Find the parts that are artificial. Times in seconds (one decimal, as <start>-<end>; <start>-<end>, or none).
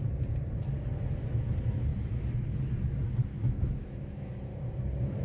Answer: 3.3-4.3